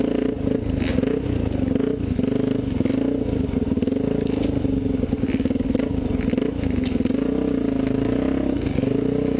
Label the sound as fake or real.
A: real